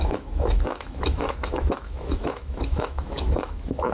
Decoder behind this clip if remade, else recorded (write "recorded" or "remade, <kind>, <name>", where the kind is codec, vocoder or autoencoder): remade, autoencoder, DAC-VAE